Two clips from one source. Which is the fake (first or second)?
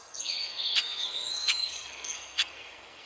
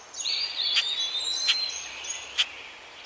first